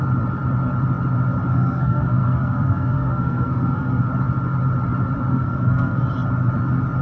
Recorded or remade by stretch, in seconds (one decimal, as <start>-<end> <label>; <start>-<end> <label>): 0.0-1.5 recorded; 1.5-4.0 remade; 4.0-5.3 recorded; 5.3-6.0 remade; 6.0-7.0 recorded